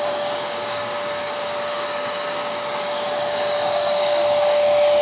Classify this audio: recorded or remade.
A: remade